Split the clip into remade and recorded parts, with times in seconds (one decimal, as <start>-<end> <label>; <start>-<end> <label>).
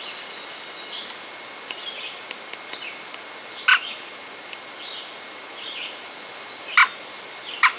0.0-6.8 recorded; 6.8-7.8 remade